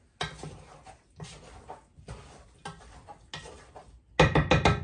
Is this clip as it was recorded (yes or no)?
yes